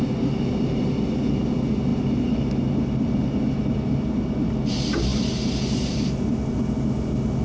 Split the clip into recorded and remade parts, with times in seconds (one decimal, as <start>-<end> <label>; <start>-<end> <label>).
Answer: 0.0-7.4 recorded